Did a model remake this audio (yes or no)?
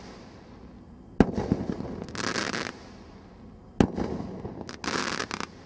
no